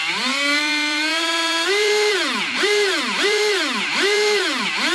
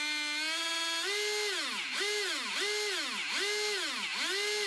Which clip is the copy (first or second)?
first